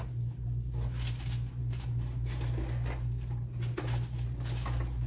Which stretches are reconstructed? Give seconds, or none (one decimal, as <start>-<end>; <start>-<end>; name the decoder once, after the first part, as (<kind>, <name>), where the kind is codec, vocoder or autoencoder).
none